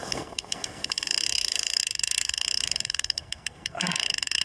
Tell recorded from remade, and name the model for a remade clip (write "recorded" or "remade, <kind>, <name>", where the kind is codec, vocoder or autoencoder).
remade, codec, SNAC